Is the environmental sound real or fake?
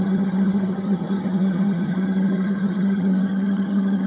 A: fake